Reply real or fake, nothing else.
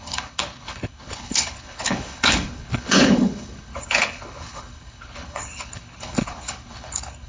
fake